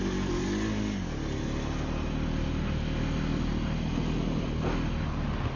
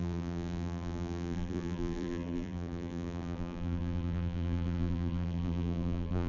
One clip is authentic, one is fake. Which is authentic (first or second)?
first